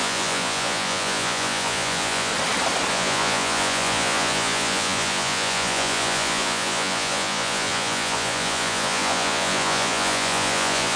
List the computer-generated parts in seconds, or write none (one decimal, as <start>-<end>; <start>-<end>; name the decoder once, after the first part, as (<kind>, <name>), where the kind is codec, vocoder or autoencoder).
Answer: 0.0-2.3 (vocoder, Vocos); 2.9-11.0